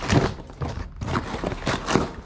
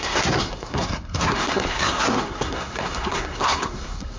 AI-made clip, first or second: second